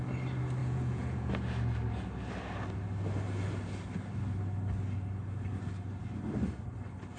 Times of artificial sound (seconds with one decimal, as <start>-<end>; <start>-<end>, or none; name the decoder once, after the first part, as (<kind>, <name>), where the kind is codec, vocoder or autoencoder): 0.6-1.3 (vocoder, Vocos)